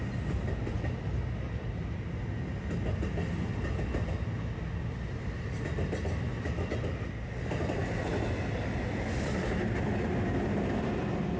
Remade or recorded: recorded